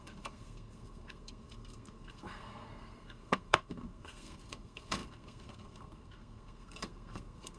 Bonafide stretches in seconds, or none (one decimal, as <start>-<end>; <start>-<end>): none